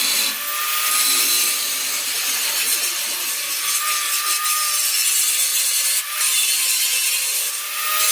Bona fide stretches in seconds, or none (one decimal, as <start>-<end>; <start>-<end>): 0.0-8.1